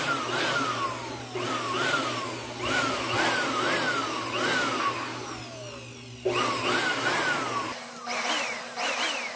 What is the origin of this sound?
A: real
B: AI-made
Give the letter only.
A